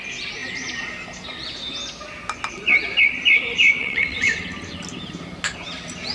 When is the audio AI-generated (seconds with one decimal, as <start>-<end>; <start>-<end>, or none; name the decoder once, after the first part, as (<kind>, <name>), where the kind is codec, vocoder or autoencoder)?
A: 3.8-4.4 (vocoder, WaveNeXt)